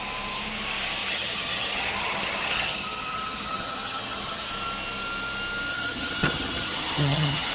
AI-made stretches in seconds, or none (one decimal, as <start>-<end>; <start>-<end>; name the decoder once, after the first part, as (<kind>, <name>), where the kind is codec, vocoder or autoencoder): 1.0-4.5 (vocoder, HiFi-GAN); 5.7-7.5